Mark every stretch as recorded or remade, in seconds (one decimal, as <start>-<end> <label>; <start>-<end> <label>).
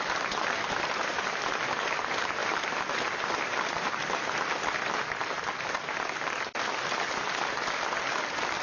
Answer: 0.0-8.6 recorded